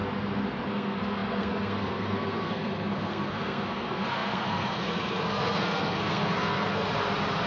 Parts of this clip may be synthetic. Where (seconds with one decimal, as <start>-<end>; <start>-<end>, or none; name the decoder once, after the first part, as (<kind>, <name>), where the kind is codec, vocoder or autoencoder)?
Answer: 0.7-6.8 (codec, SNAC)